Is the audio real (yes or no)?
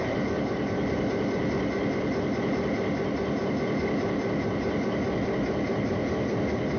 yes